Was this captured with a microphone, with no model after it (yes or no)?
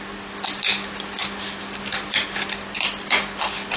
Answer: yes